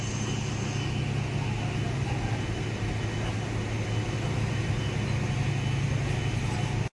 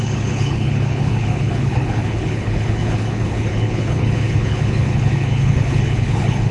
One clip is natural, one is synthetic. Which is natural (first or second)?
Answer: first